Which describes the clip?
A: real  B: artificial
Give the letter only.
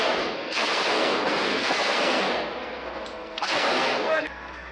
B